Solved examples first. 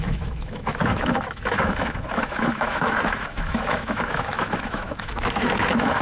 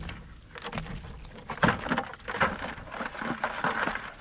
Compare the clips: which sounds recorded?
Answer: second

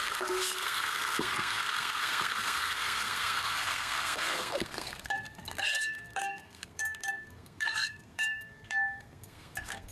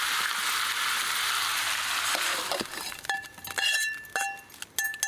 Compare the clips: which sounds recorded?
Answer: second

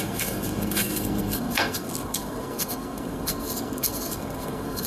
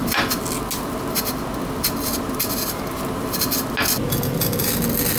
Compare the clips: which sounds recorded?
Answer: second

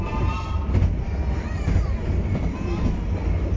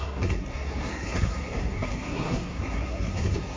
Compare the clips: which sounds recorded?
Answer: first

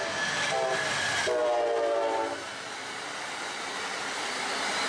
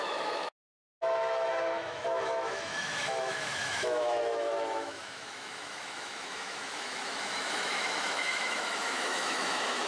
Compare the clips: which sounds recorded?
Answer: first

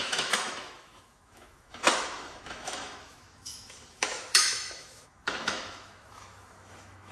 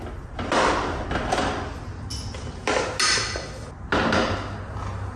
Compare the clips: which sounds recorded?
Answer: second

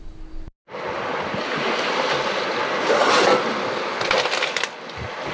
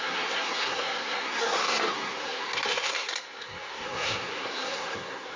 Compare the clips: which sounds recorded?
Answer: first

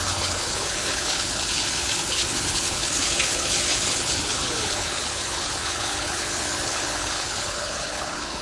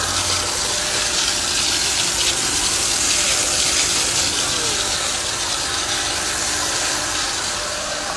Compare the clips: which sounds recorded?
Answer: second